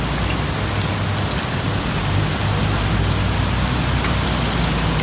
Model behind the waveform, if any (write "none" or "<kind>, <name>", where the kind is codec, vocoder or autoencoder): none